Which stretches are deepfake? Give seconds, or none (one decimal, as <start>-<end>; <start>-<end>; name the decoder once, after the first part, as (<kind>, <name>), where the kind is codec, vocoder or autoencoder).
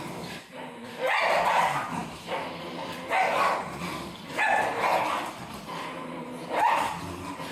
2.0-2.6 (autoencoder, DAC-VAE)